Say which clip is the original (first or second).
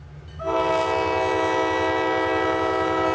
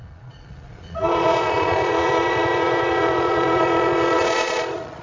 first